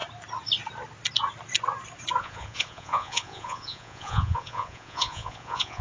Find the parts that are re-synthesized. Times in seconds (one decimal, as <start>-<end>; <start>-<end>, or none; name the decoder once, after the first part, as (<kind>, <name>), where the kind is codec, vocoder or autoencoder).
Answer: 2.2-5.8 (vocoder, Vocos)